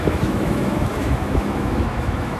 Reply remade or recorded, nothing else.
remade